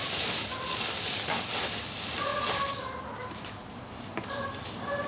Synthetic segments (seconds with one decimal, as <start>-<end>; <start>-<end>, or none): 0.0-2.3; 4.3-5.1